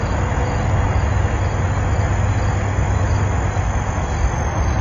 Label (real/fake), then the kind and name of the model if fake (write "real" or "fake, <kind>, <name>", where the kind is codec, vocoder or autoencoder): real